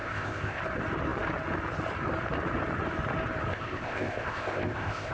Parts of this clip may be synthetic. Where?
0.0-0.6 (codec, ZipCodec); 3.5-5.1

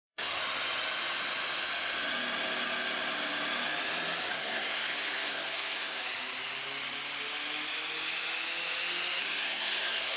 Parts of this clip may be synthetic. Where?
0.0-0.4 (codec, SNAC); 4.3-6.0; 9.2-10.2

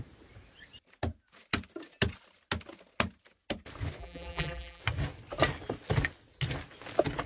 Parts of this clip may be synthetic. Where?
4.0-4.8 (vocoder, BigVGAN v2)

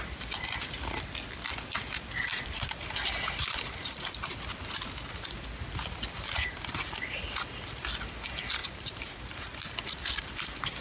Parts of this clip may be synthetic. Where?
2.3-3.1 (vocoder, BigVGAN v2); 8.6-9.6

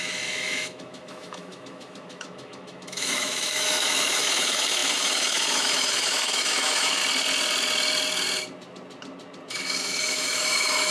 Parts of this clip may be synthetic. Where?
0.0-7.0 (autoencoder, DAC-VAE); 9.5-10.9

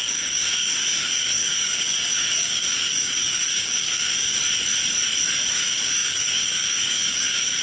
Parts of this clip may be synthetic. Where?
0.0-4.4 (codec, DAC); 5.5-7.6

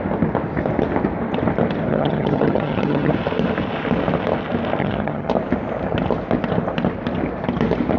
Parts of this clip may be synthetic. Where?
1.9-3.1 (vocoder, HiFi-GAN); 4.8-5.3

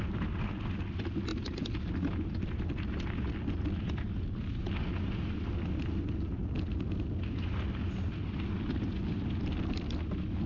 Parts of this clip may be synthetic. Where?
none